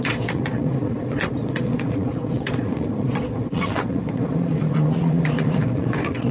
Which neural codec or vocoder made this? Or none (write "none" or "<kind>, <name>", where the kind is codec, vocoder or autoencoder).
vocoder, Vocos